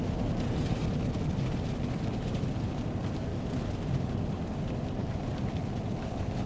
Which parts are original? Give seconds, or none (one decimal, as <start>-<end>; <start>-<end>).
0.0-6.5